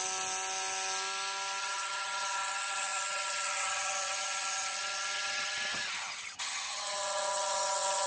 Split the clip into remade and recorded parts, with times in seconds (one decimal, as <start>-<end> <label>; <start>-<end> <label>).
0.0-1.6 recorded; 1.6-8.1 remade